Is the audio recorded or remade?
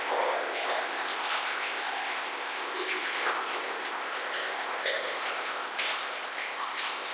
remade